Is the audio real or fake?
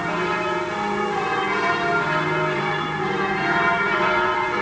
fake